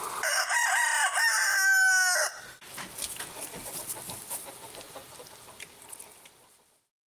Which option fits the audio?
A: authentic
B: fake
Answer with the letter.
A